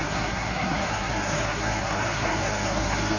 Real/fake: fake